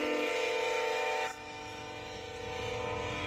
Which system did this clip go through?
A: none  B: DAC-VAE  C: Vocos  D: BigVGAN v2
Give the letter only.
A